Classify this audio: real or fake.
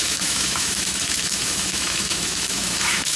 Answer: fake